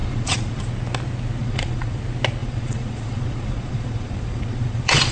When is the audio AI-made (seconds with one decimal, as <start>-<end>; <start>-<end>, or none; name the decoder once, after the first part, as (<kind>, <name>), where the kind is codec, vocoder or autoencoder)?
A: 0.0-0.6 (vocoder, Vocos); 1.4-2.0; 2.4-5.1